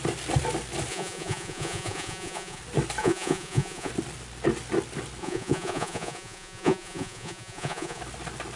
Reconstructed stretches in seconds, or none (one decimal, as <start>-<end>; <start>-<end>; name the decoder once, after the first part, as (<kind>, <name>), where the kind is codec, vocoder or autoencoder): 0.9-2.6 (vocoder, Vocos); 3.0-3.9; 5.2-8.0